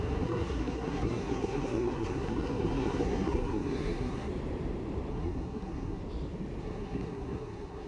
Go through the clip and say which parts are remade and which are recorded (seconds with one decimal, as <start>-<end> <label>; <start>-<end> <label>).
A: 0.0-4.3 remade; 4.3-5.1 recorded; 5.1-6.0 remade; 6.0-6.6 recorded; 6.6-7.9 remade